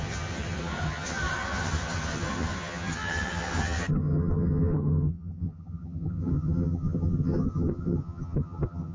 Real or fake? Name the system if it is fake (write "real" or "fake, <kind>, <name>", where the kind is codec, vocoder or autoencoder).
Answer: fake, vocoder, HiFi-GAN